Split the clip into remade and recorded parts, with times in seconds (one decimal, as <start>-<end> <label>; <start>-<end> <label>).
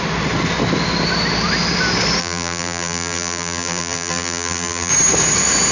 0.0-2.2 recorded; 2.2-4.9 remade; 4.9-5.7 recorded